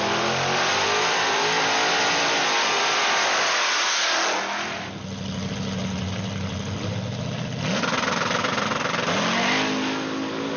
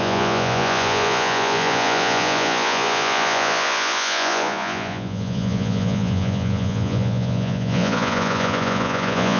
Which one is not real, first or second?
second